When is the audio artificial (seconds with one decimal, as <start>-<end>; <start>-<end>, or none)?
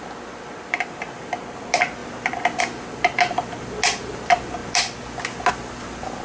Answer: none